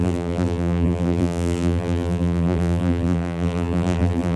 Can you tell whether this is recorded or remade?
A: remade